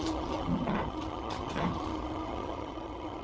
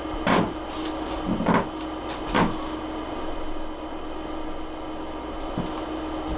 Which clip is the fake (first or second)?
first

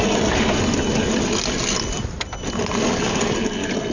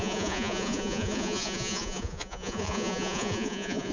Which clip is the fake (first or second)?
second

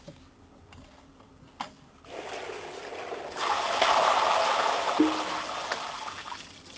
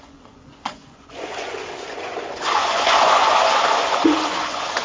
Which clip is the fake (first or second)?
second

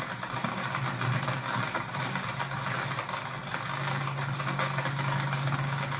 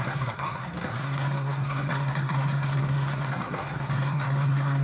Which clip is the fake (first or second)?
second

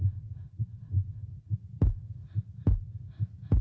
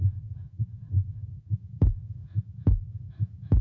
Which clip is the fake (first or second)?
second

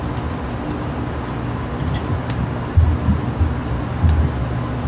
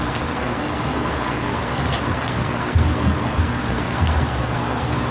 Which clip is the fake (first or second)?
second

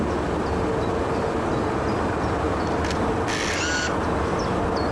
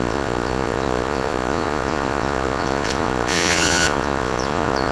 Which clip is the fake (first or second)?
second